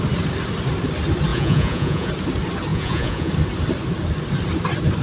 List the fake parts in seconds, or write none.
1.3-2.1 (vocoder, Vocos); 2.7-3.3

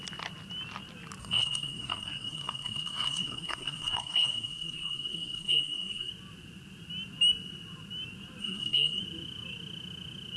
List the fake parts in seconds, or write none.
1.2-6.1 (codec, SNAC); 8.4-9.0

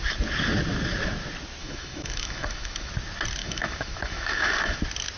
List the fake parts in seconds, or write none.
1.6-2.9 (autoencoder, DAC-VAE); 3.4-4.8

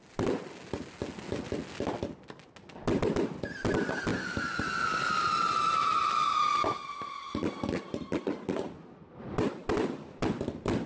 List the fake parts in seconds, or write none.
none

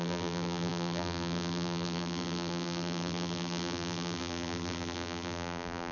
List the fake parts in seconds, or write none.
0.0-5.9 (vocoder, BigVGAN v2)